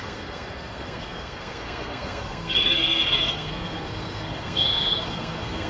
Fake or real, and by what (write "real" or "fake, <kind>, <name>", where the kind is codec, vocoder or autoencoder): fake, codec, SNAC